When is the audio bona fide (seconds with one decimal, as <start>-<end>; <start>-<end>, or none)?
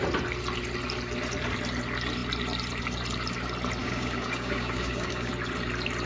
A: 0.0-3.8; 5.3-6.1